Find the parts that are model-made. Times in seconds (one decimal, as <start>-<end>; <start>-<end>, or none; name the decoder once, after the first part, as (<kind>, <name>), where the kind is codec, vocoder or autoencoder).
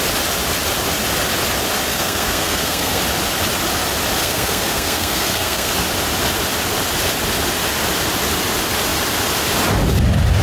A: 1.9-3.0 (codec, SNAC); 4.2-5.7